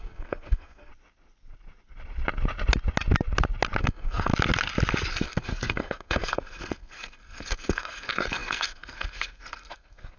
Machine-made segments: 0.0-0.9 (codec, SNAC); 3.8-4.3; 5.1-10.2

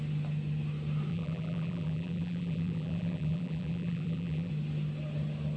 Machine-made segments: 1.1-4.5 (vocoder, BigVGAN v2)

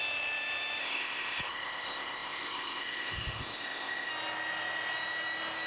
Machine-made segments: 0.8-4.1 (codec, ZipCodec)